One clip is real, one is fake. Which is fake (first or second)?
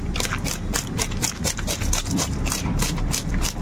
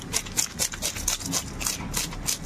first